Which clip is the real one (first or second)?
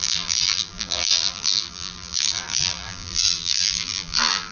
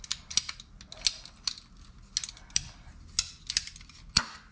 second